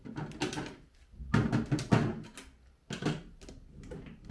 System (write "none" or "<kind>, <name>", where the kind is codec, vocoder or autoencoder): none